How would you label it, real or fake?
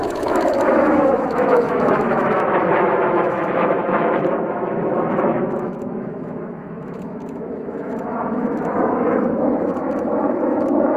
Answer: fake